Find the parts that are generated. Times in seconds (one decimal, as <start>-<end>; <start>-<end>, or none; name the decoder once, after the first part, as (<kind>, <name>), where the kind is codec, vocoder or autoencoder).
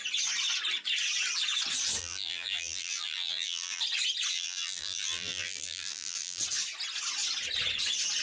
2.0-3.8 (vocoder, BigVGAN v2); 4.3-6.4